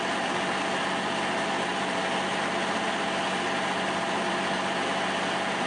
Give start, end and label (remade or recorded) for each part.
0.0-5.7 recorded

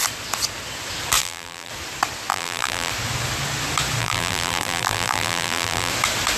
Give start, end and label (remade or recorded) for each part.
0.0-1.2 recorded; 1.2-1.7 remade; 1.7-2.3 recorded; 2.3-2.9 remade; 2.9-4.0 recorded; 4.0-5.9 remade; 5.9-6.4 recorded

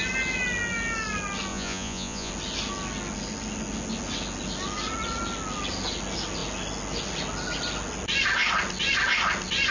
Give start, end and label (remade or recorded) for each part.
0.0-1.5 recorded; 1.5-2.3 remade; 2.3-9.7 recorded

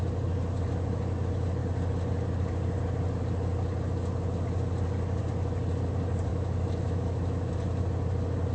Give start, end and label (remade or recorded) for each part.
0.0-6.3 recorded; 6.3-7.5 remade; 7.5-8.5 recorded

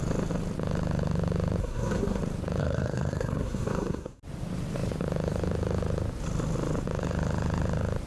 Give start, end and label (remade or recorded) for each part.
0.0-1.6 recorded; 1.6-2.2 remade; 2.2-2.6 recorded; 2.6-4.2 remade; 4.2-8.1 recorded

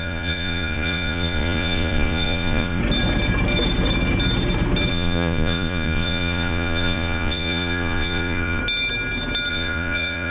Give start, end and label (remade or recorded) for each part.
0.0-2.8 remade; 2.8-4.9 recorded; 4.9-8.6 remade; 8.6-9.5 recorded; 9.5-10.3 remade

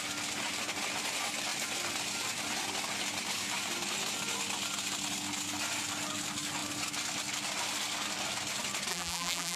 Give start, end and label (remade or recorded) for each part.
0.0-8.9 recorded; 8.9-9.6 remade